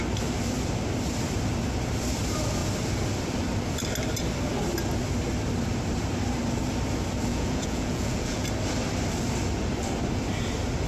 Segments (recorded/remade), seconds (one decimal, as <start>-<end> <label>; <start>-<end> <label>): 0.0-7.3 recorded; 7.3-8.5 remade; 8.5-10.9 recorded